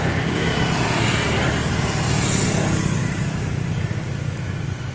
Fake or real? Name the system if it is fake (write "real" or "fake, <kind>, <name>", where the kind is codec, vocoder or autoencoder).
real